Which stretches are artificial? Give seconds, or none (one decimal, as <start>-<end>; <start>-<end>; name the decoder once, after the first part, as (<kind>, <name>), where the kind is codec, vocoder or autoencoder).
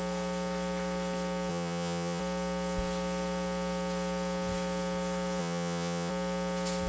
1.5-2.2 (vocoder, Vocos); 5.4-6.1